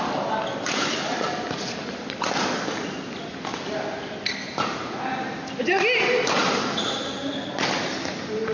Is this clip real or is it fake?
real